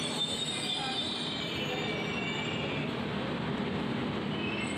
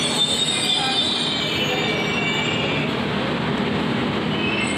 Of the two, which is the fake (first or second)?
first